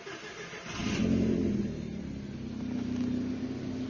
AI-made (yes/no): no